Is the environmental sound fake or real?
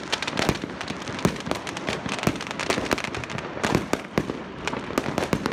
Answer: real